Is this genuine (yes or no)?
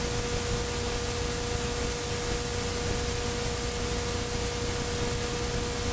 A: yes